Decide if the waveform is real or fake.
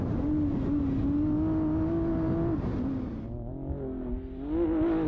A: real